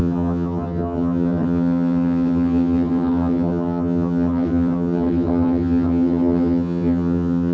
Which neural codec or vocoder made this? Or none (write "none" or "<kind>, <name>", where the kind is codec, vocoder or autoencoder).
vocoder, HiFi-GAN